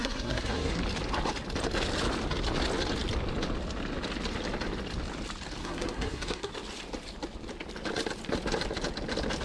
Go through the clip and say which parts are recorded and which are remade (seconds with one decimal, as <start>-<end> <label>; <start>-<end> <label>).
0.0-0.8 remade; 0.8-5.6 recorded; 5.6-6.5 remade; 6.5-9.4 recorded